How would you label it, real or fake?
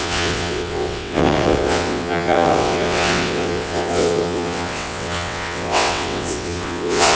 fake